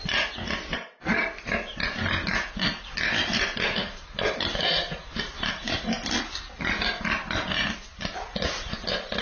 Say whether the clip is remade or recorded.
recorded